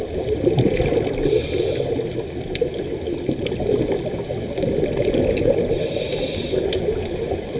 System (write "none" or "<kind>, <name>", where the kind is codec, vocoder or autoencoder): none